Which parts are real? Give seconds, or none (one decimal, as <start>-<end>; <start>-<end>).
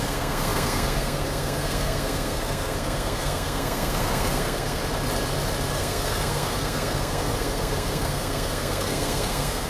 4.8-5.7